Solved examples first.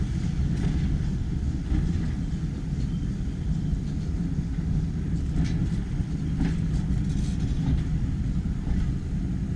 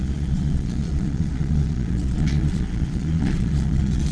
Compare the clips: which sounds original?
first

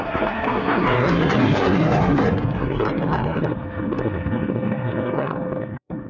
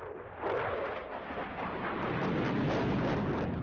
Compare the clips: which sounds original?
second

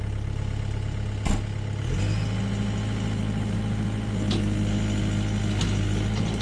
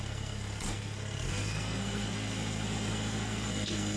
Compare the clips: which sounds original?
first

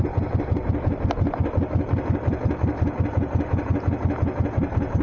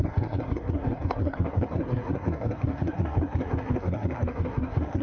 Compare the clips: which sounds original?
first